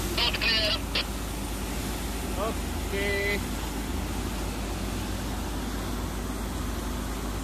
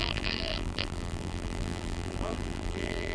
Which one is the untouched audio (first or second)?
first